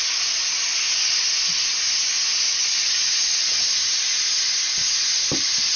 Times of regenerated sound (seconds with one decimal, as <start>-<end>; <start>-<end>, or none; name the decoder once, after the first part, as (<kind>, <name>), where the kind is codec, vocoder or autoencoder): none